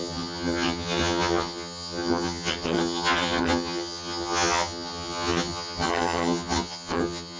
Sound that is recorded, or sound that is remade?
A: remade